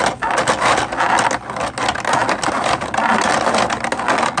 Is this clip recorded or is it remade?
recorded